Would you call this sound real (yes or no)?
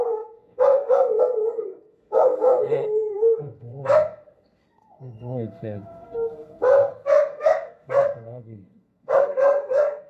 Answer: no